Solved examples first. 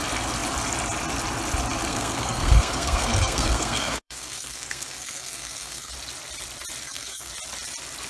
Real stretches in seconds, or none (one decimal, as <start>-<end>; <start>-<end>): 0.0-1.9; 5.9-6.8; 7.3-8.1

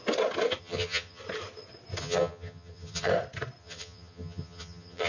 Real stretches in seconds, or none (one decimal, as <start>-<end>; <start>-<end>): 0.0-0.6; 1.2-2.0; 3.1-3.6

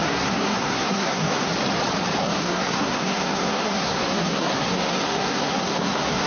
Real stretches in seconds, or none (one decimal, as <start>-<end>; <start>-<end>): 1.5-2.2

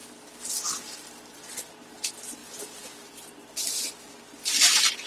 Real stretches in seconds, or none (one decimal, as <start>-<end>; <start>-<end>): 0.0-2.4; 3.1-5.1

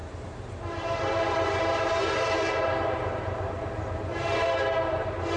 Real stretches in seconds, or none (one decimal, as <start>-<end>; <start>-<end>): none

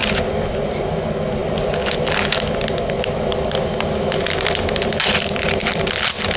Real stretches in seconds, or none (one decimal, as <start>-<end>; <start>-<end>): 0.0-6.4

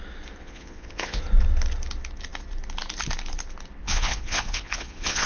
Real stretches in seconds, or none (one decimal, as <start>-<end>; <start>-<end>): 0.0-0.4; 1.2-3.8